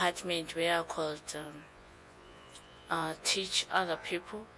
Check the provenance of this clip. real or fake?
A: fake